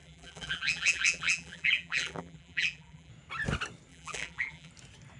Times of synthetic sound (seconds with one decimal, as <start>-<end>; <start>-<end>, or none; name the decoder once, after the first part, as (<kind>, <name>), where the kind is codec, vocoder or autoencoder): 0.0-3.1 (vocoder, BigVGAN v2); 3.9-4.7